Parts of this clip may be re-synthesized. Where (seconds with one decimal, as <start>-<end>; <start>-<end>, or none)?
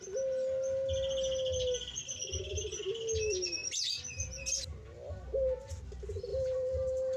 6.3-7.2